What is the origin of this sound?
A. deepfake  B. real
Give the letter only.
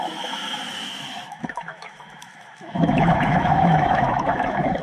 A